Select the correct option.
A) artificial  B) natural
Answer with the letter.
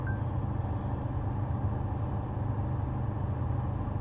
B